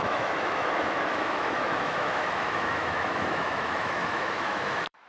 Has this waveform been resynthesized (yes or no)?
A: yes